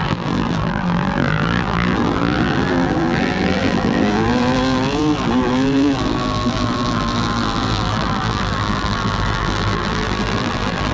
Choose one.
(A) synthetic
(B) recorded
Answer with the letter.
A